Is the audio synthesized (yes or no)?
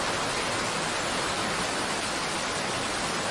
no